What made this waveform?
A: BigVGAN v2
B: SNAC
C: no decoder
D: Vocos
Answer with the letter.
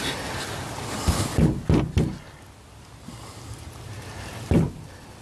C